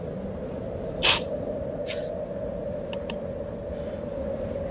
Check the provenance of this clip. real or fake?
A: real